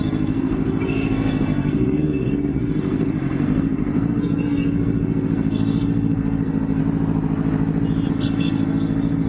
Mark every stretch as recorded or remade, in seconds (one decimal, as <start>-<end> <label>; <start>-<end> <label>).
0.0-6.8 remade; 6.8-8.1 recorded; 8.1-9.3 remade